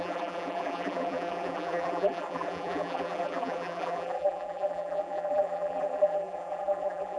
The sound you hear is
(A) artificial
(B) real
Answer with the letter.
A